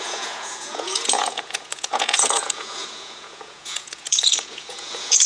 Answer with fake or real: fake